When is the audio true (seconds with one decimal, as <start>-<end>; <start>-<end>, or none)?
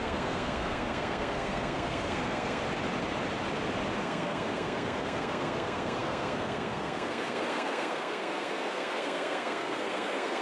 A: 2.6-4.0